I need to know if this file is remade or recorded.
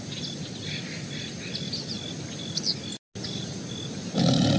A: recorded